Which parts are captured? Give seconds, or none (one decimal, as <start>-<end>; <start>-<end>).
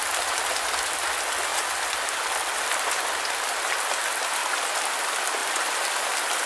0.0-6.5